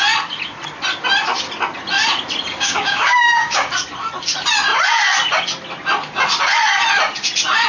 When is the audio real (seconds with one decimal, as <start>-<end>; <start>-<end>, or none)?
0.0-2.5; 3.8-7.7